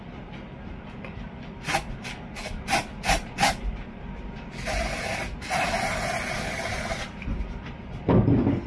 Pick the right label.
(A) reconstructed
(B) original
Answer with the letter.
B